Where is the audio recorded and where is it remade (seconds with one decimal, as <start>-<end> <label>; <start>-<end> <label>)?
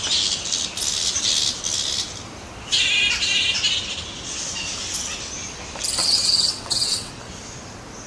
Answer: 0.0-6.0 recorded; 6.0-7.1 remade; 7.1-8.1 recorded